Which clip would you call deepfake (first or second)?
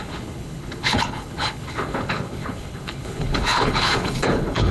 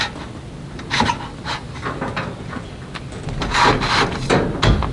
first